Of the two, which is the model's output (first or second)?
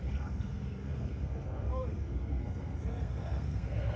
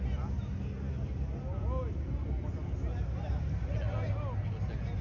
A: first